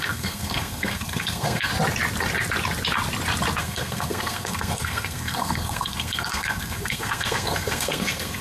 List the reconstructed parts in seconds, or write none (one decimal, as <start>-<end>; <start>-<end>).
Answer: 0.0-1.7; 3.6-8.4